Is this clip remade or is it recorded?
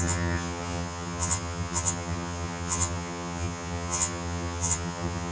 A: remade